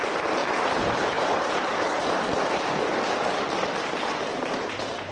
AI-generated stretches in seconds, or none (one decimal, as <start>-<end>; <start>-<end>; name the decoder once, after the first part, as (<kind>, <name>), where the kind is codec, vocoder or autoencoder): 0.4-2.8 (vocoder, BigVGAN v2); 4.3-5.1